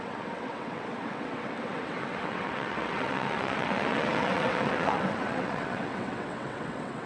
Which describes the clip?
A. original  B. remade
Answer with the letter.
B